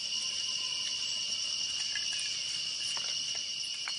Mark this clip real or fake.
real